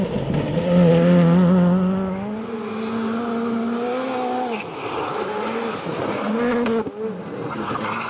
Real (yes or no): yes